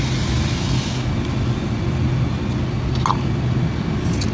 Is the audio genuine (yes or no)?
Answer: yes